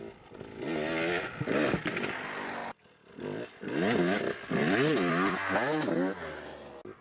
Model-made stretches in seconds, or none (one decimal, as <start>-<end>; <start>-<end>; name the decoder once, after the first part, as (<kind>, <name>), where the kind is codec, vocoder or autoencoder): 4.6-5.1 (vocoder, BigVGAN v2)